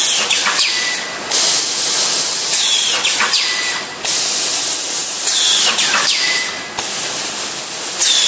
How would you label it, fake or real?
real